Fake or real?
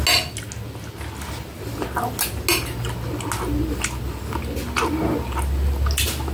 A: real